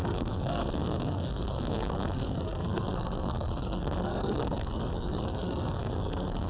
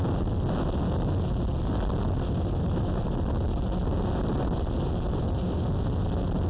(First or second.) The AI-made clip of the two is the first